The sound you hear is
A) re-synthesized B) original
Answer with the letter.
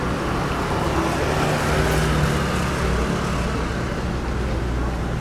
B